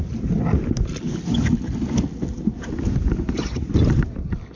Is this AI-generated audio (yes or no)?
no